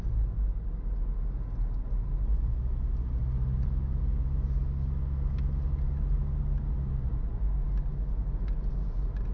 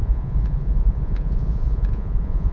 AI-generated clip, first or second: second